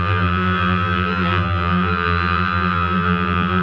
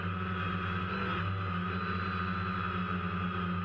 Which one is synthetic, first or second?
first